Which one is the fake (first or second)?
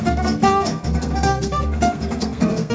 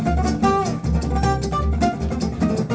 first